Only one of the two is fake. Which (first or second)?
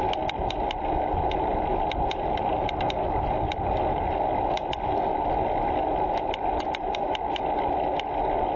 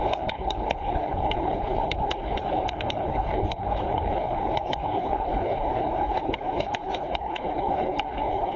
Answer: second